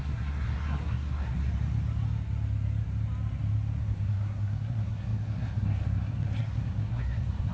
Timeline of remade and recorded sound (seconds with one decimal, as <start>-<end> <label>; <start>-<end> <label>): 0.0-1.5 remade; 1.5-3.8 recorded; 3.8-7.5 remade